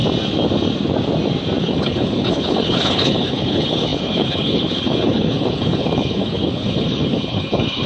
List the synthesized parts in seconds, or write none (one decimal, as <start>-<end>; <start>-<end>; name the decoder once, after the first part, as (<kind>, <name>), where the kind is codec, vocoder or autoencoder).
1.6-7.9 (codec, HILCodec)